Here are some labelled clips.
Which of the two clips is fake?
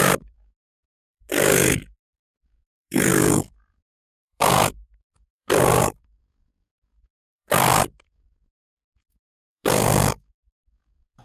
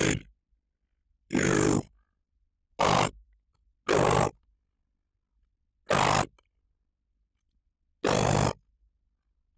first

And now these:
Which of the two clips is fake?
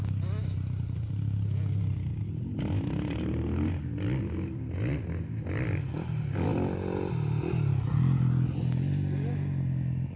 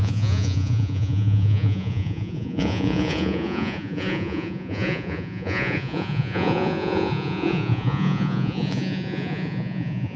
second